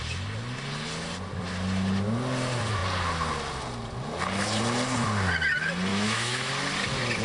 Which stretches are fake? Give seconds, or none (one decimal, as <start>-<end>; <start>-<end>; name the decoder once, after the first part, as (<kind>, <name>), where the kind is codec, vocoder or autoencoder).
5.9-6.5 (autoencoder, DAC-VAE)